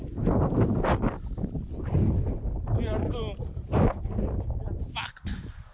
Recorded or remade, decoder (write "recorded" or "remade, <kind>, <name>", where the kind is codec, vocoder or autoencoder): recorded